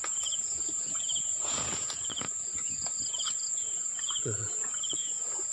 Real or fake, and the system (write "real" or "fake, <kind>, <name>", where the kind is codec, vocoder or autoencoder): fake, vocoder, Vocos